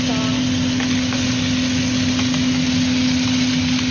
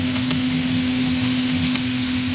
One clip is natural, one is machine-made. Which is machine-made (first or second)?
second